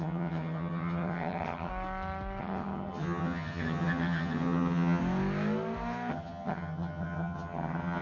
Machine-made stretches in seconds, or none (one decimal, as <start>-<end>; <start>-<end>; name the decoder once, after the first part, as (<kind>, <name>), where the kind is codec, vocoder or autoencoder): 0.0-1.7 (vocoder, HiFi-GAN); 2.4-5.0; 6.1-8.0